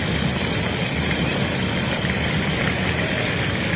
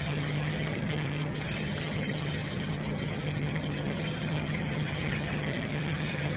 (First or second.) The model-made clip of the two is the second